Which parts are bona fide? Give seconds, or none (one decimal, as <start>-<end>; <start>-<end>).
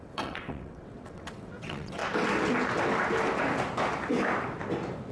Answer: 2.0-5.1